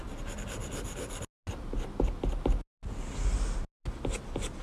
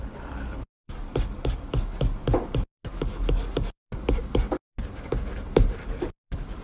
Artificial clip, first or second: second